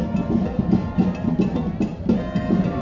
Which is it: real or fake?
real